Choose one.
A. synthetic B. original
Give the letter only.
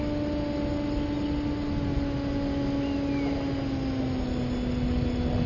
B